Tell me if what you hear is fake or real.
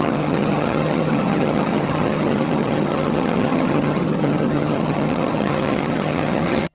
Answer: fake